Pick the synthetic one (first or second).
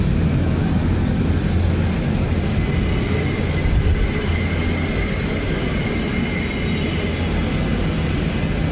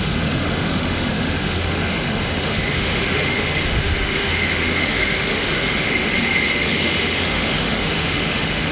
second